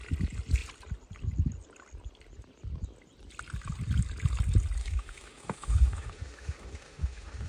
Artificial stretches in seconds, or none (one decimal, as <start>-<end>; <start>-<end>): 4.8-7.5